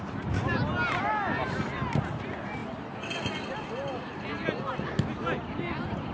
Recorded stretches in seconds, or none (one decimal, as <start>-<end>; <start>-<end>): 0.0-6.1